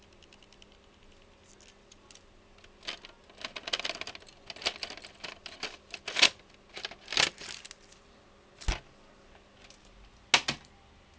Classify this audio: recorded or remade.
recorded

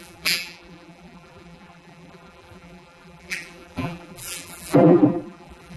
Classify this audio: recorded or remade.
remade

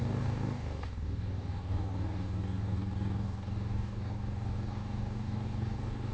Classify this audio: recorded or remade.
remade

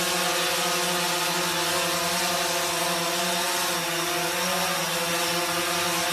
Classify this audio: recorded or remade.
recorded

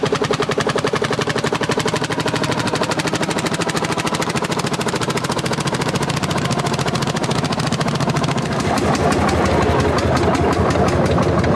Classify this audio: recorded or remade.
recorded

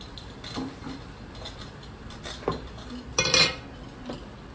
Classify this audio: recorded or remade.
recorded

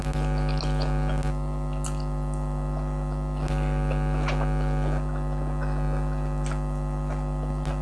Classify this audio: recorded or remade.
recorded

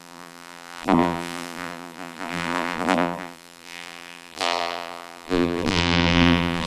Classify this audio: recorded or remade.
remade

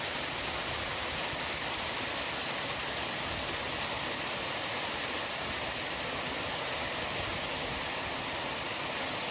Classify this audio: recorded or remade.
recorded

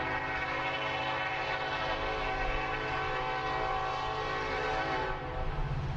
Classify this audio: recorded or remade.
recorded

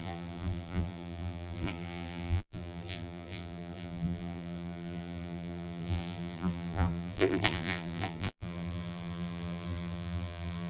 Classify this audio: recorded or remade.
remade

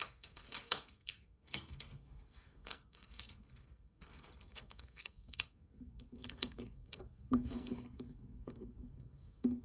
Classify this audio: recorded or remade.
remade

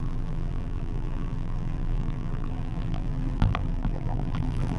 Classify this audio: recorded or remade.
remade